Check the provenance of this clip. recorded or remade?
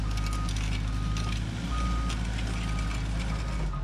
recorded